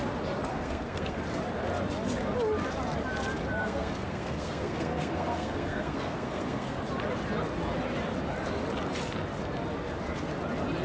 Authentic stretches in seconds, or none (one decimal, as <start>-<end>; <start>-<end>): 0.0-0.5; 1.2-3.6; 6.8-10.8